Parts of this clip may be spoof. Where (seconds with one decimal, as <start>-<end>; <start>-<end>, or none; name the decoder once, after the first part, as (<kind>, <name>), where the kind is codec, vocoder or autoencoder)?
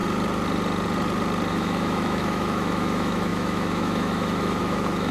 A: 1.5-5.1 (autoencoder, DAC-VAE)